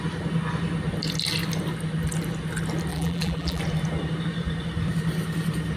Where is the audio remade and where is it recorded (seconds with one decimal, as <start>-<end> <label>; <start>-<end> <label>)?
0.0-2.9 recorded; 2.9-3.6 remade; 3.6-5.8 recorded